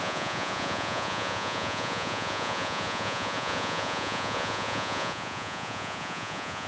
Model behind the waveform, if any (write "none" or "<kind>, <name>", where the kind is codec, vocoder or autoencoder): vocoder, Vocos